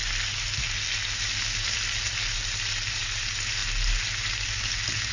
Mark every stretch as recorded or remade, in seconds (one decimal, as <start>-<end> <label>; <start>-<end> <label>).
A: 0.0-5.1 recorded